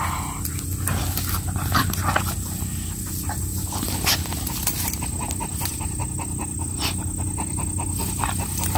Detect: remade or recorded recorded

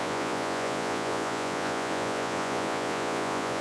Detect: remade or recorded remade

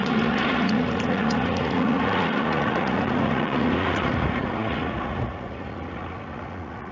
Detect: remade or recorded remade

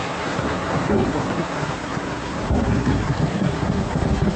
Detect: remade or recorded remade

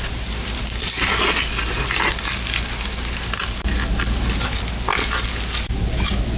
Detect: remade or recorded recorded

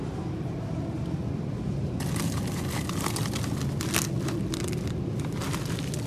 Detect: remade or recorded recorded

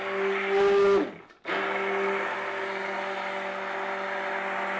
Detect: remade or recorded recorded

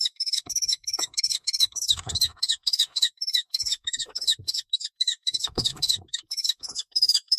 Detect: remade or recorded remade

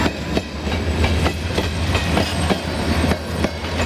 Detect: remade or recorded remade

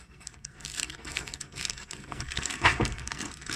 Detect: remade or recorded remade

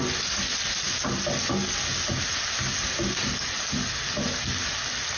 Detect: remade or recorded recorded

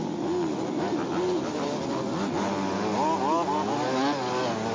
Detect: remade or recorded recorded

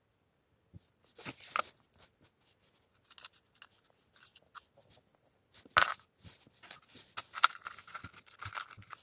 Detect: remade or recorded recorded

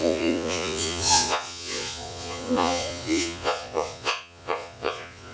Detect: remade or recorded remade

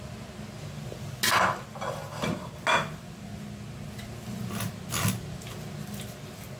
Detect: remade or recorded recorded